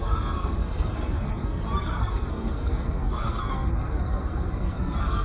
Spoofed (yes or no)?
yes